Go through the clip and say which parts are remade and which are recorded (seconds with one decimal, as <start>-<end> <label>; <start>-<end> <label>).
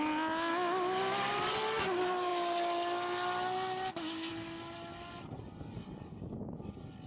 0.0-7.1 recorded